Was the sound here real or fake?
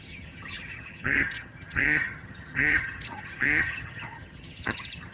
fake